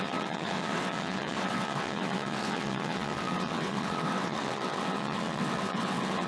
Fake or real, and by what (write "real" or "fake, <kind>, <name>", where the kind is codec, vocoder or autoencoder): fake, vocoder, WaveNeXt